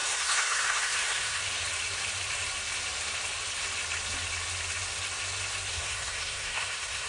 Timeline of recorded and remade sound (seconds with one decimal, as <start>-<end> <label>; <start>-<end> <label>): 0.0-1.4 remade; 1.4-5.7 recorded; 5.7-7.1 remade